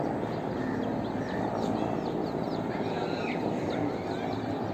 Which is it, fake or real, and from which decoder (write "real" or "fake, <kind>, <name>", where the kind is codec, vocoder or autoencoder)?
real